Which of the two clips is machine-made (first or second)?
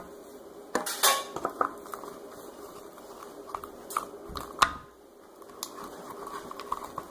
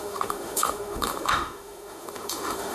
second